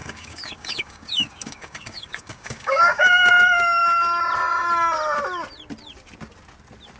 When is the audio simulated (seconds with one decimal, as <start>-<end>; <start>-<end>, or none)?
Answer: 0.0-3.3